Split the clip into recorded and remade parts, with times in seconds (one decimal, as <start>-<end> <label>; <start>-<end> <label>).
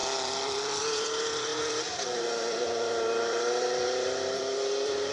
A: 0.0-5.1 remade